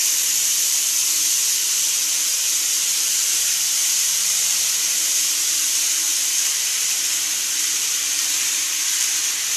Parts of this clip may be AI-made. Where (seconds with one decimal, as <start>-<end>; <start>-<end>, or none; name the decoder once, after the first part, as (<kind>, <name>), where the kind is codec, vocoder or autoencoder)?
0.0-1.0 (vocoder, BigVGAN v2); 2.8-9.6